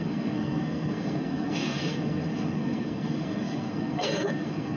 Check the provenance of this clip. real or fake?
fake